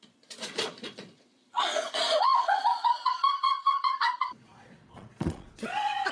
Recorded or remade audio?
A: remade